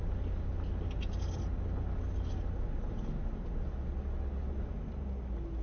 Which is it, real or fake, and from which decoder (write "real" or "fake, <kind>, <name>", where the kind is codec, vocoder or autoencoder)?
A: real